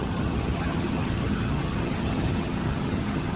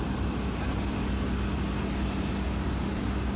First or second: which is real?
second